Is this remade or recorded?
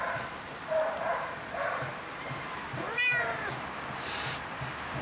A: remade